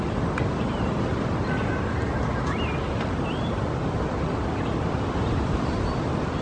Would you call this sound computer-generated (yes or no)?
no